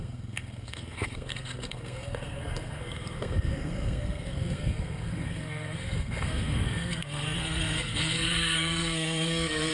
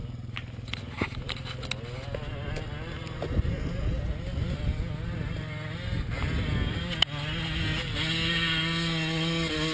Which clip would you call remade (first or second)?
first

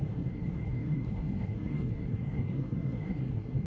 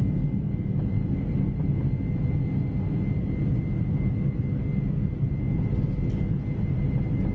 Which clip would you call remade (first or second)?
first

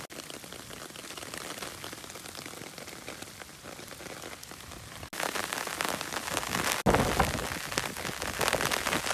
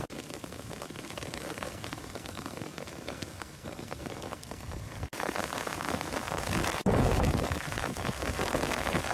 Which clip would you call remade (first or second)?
second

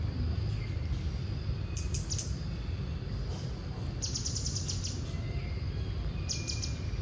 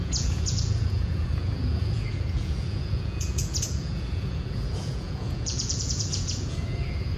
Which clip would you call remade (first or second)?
second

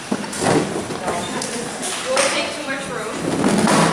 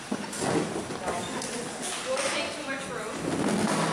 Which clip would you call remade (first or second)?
first